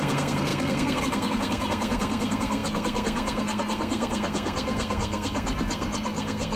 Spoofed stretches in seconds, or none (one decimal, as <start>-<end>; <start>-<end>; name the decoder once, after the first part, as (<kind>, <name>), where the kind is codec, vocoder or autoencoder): 0.0-6.6 (codec, SNAC)